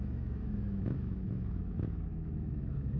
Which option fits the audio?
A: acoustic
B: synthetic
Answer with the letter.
B